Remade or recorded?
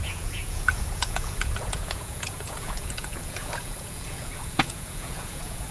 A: remade